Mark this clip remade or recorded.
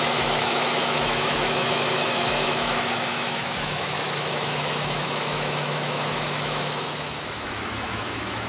remade